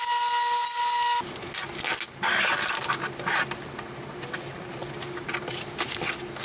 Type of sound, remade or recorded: recorded